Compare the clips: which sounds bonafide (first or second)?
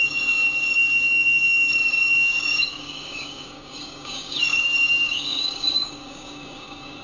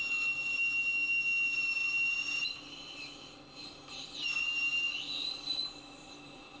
second